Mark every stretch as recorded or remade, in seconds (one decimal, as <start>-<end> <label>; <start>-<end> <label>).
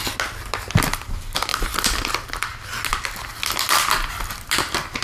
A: 0.0-5.0 recorded